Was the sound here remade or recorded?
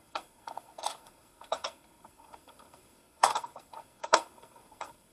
remade